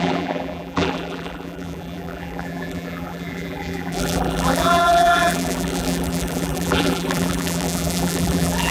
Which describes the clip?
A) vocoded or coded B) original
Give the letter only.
A